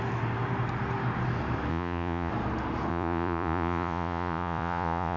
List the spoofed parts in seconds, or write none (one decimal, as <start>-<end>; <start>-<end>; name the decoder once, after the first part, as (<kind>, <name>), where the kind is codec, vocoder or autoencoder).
1.7-2.3 (vocoder, Vocos); 2.9-5.2